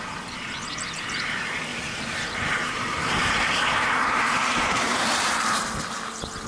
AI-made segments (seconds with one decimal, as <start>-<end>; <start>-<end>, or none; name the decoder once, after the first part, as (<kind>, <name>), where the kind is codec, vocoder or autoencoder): 1.7-5.6 (vocoder, BigVGAN v2)